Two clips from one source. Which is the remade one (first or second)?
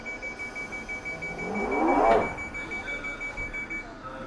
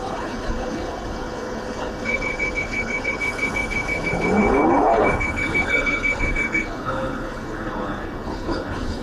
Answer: second